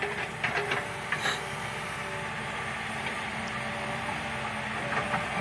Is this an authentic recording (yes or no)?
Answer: yes